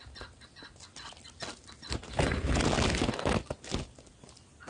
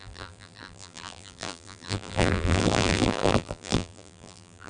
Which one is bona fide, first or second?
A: first